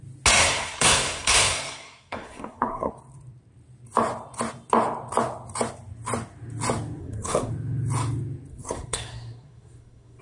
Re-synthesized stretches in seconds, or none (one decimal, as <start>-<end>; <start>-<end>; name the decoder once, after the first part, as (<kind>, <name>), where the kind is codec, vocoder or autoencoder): 0.4-2.9 (codec, SNAC); 7.0-7.5; 8.5-10.2